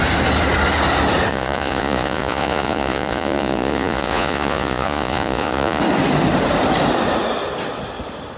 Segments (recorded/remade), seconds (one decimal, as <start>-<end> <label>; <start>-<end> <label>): 0.0-1.3 recorded; 1.3-5.8 remade; 5.8-8.4 recorded